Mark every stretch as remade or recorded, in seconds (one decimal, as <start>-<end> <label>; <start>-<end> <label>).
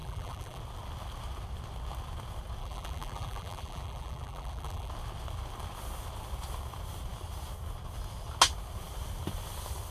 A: 0.0-0.6 remade; 0.6-2.6 recorded; 2.6-4.9 remade; 4.9-9.9 recorded